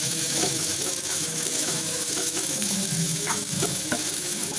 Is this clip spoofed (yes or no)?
yes